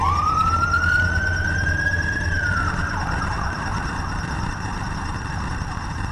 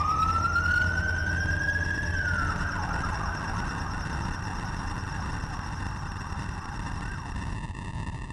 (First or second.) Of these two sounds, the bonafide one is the second